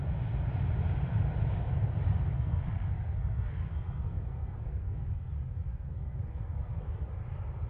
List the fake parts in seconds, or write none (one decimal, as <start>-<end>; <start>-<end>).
2.3-5.3; 5.7-7.1